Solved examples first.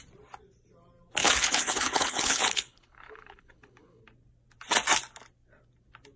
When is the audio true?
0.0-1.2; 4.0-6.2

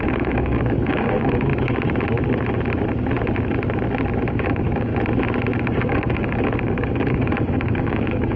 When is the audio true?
1.5-4.3; 4.9-5.6

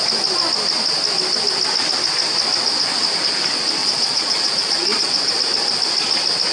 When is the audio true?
0.0-3.8; 5.3-6.5

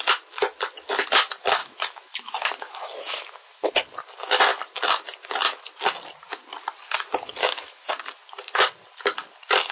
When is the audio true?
0.0-1.6; 3.7-7.4; 7.9-9.7

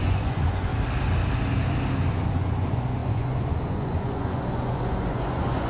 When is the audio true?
0.7-2.1

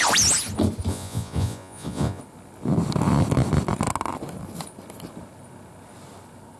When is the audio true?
0.0-0.9; 2.2-6.6

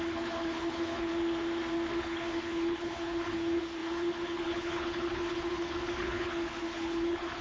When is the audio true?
1.1-2.0